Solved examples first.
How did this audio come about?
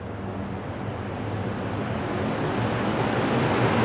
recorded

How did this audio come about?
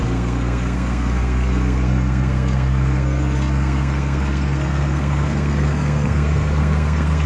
remade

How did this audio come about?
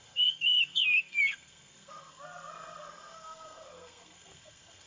remade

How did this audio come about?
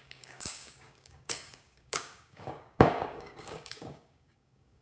remade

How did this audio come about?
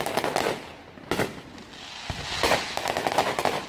recorded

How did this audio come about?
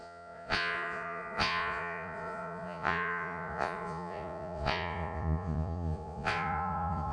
remade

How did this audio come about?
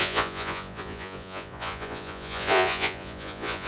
remade